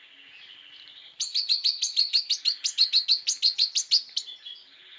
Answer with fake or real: real